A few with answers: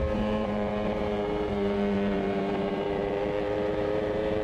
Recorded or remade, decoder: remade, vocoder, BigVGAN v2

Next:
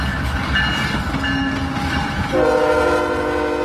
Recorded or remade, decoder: recorded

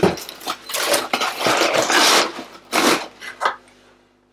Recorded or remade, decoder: recorded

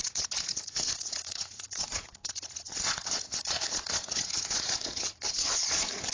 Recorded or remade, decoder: remade, vocoder, Vocos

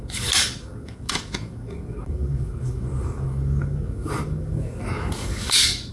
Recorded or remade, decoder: remade, codec, DAC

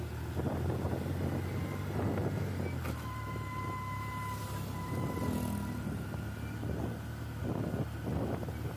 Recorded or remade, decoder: recorded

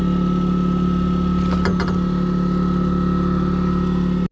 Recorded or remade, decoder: recorded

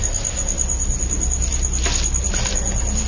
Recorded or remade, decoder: recorded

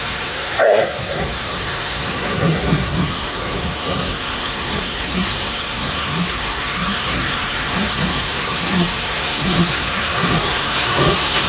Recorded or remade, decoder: remade, codec, SNAC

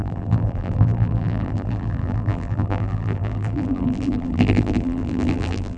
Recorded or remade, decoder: remade, vocoder, BigVGAN v2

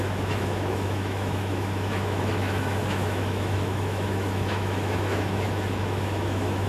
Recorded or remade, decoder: remade, autoencoder, DAC-VAE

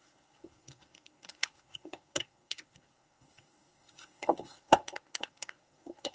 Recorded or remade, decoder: remade, codec, SNAC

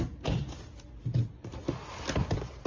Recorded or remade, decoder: recorded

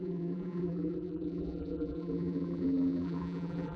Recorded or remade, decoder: remade, vocoder, BigVGAN v2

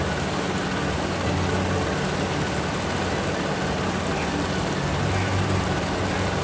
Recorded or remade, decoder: recorded